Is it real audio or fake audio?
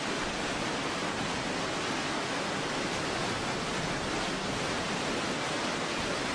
real